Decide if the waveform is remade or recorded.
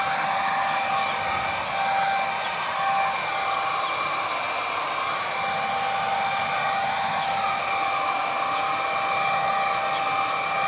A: recorded